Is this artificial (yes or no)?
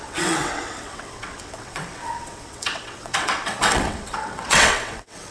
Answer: yes